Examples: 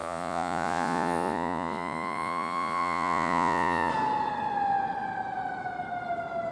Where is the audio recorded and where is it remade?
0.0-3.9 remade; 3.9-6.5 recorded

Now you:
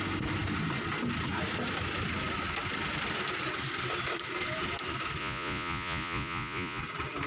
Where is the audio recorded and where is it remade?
0.0-5.2 recorded; 5.2-6.8 remade; 6.8-7.3 recorded

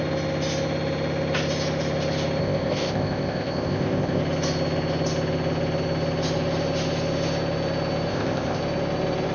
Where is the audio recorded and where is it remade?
0.0-2.4 recorded; 2.4-4.2 remade; 4.2-8.1 recorded; 8.1-8.6 remade; 8.6-9.3 recorded

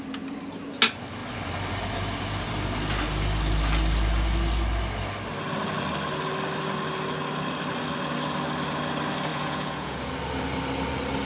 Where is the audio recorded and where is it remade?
0.0-9.3 recorded; 9.3-10.1 remade; 10.1-11.3 recorded

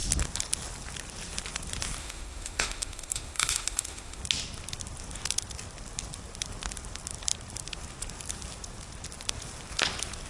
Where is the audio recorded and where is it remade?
0.0-2.0 recorded; 2.0-4.2 remade; 4.2-10.3 recorded

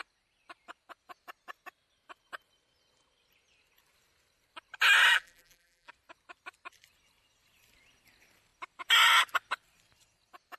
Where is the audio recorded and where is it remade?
0.0-5.1 recorded; 5.1-5.9 remade; 5.9-10.6 recorded

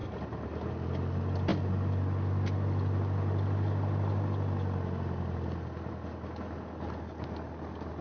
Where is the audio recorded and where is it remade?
0.0-8.0 recorded